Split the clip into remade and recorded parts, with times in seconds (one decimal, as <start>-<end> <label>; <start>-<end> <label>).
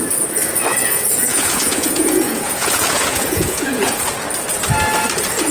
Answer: 0.0-0.7 recorded; 0.7-4.0 remade; 4.0-5.5 recorded